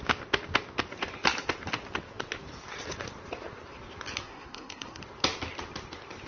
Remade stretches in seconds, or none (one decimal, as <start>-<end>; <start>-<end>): 4.2-5.0